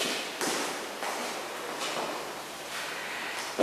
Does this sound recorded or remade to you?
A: recorded